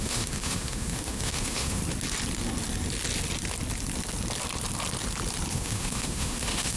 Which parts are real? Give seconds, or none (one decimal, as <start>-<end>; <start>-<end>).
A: 1.8-5.5